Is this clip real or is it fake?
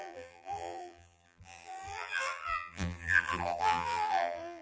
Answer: fake